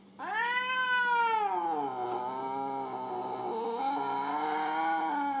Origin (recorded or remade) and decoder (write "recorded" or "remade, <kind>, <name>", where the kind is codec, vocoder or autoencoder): recorded